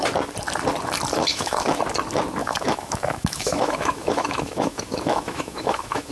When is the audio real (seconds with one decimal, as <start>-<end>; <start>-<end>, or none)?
0.0-1.3; 1.8-2.4